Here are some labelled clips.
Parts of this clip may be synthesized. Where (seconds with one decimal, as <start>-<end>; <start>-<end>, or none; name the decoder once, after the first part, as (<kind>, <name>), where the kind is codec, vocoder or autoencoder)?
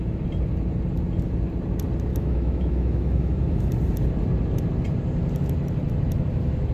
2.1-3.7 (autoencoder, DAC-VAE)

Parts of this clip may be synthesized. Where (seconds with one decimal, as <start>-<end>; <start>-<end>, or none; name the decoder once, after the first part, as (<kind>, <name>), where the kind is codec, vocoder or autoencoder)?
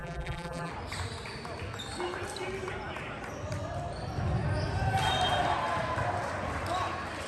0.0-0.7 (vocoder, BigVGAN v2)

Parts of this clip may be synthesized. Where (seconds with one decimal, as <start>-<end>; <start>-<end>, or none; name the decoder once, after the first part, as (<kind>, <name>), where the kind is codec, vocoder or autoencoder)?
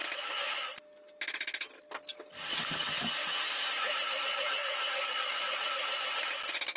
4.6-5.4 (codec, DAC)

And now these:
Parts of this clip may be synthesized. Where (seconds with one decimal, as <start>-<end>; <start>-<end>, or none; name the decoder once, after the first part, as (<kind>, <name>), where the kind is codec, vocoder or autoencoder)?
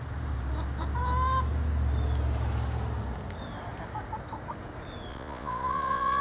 5.1-6.2 (vocoder, Vocos)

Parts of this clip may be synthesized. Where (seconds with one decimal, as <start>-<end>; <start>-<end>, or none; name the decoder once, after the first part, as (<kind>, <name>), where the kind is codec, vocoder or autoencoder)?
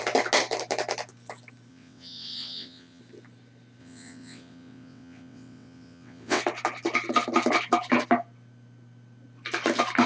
1.7-3.0 (vocoder, WaveNeXt); 3.8-6.4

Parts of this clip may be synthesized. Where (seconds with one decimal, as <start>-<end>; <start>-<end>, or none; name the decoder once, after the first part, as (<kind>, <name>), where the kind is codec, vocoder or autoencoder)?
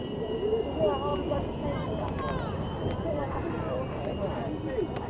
1.1-4.2 (vocoder, BigVGAN v2)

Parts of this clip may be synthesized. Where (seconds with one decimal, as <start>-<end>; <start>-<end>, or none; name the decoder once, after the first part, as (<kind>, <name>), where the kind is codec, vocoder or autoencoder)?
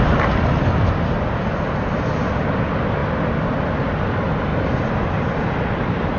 none